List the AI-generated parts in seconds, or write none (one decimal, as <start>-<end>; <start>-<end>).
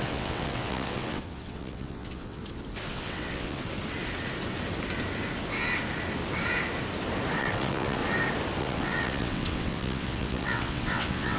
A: 0.0-2.4; 2.9-3.6; 7.4-8.0; 8.6-11.4